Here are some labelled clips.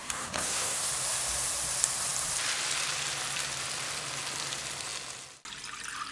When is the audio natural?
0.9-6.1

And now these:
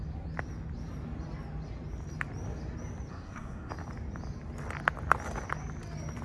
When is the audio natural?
0.0-3.1; 3.7-6.2

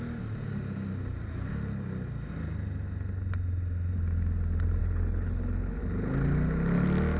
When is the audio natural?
0.0-4.8; 5.8-7.2

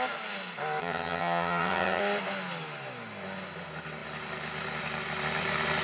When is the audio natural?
0.0-0.8; 2.0-5.8